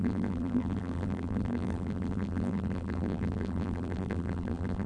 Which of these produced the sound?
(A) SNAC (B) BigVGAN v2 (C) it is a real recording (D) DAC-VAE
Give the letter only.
B